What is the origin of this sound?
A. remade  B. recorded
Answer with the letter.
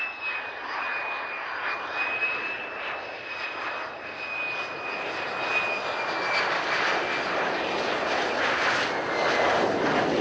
B